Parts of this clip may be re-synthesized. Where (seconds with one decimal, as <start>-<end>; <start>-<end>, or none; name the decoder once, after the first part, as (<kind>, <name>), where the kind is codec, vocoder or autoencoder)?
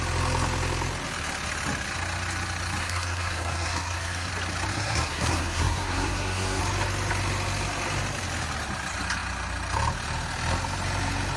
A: 2.8-4.3 (codec, SNAC); 4.7-6.6